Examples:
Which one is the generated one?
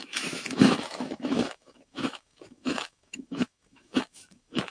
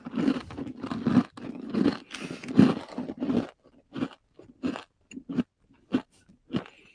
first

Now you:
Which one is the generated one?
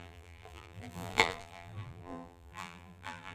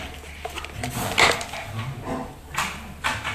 first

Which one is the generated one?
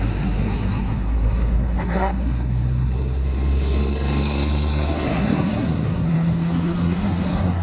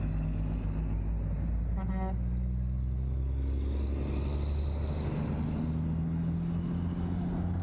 first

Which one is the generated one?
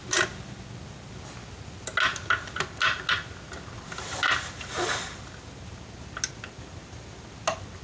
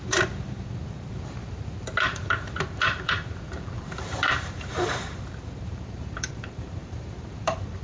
second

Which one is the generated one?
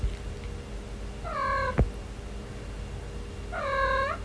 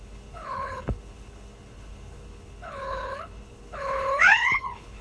second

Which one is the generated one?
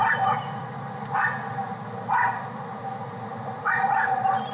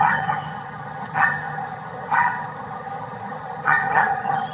second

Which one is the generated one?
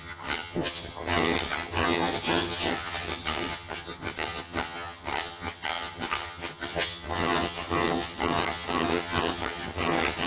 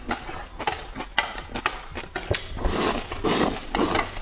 first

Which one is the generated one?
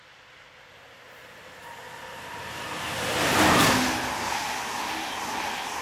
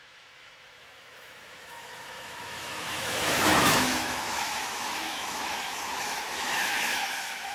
second